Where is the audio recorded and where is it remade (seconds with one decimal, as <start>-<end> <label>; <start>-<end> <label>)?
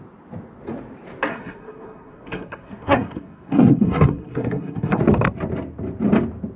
0.0-1.3 recorded; 1.3-5.0 remade; 5.0-6.6 recorded